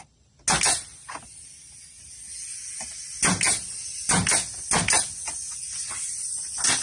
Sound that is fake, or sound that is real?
real